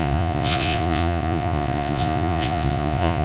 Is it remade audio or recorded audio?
remade